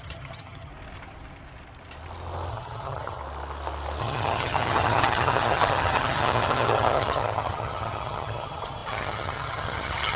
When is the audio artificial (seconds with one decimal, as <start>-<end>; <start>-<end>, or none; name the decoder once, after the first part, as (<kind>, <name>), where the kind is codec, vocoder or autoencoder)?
0.0-0.7 (vocoder, HiFi-GAN); 2.5-3.2; 4.0-10.2